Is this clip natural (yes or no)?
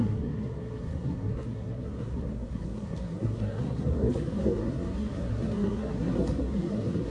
no